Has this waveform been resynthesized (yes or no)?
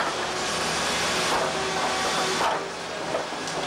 no